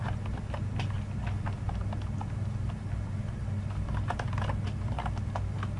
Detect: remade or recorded recorded